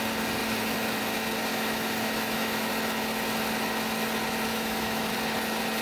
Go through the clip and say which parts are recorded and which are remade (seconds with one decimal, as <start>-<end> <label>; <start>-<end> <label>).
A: 0.0-1.5 recorded; 1.5-2.7 remade; 2.7-4.5 recorded; 4.5-5.1 remade; 5.1-5.8 recorded

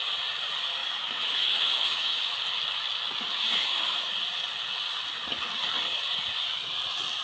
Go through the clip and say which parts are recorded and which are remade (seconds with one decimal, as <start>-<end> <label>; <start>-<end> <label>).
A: 0.0-0.8 recorded; 0.8-2.3 remade; 2.3-3.6 recorded; 3.6-4.1 remade; 4.1-7.2 recorded

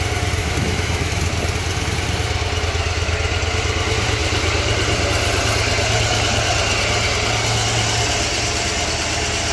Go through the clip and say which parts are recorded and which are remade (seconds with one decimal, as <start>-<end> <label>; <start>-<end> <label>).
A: 0.0-0.4 recorded; 0.4-1.2 remade; 1.2-9.5 recorded

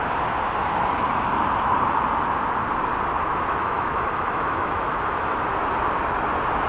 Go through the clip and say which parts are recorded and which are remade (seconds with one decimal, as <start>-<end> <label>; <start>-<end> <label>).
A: 0.0-3.3 recorded; 3.3-5.5 remade; 5.5-6.7 recorded

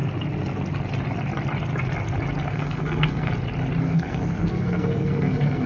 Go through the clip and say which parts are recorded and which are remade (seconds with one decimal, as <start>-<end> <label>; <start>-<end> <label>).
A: 0.0-2.5 recorded; 2.5-3.3 remade; 3.3-3.8 recorded; 3.8-5.7 remade

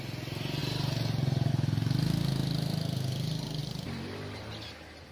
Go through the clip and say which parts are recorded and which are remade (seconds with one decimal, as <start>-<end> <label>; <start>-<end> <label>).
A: 0.0-3.6 recorded; 3.6-4.5 remade; 4.5-5.1 recorded

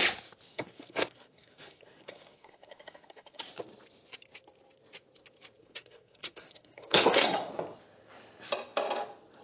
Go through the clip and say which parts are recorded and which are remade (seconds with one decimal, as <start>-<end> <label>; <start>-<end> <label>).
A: 0.0-0.5 recorded; 0.5-3.4 remade; 3.4-5.6 recorded; 5.6-7.5 remade; 7.5-9.4 recorded

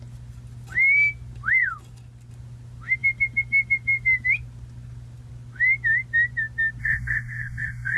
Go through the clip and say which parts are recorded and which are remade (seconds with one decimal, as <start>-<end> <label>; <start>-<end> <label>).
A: 0.0-6.8 recorded; 6.8-8.0 remade